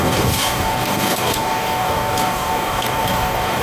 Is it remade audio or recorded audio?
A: remade